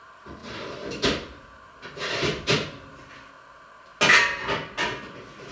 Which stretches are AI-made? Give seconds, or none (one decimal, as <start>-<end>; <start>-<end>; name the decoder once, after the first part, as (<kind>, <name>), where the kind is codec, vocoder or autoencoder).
0.4-3.3 (vocoder, BigVGAN v2)